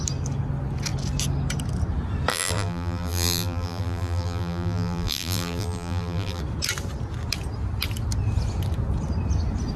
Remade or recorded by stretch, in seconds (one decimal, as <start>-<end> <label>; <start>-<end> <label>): 0.0-2.3 recorded; 2.3-6.4 remade; 6.4-9.8 recorded